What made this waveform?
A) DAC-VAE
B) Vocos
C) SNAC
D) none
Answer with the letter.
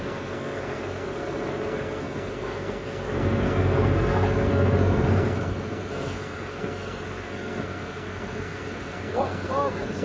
C